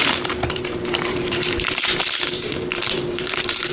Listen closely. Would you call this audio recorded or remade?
remade